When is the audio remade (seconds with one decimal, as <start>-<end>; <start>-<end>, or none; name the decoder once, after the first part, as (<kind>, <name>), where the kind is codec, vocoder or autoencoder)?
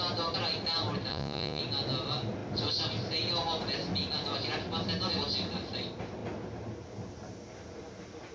1.1-1.6 (vocoder, Vocos)